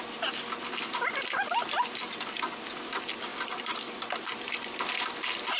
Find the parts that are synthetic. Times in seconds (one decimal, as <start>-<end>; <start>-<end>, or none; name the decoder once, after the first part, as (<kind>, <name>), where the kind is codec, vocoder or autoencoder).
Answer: 2.0-2.7 (vocoder, BigVGAN v2); 3.3-5.1